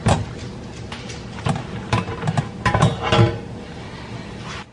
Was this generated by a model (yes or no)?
no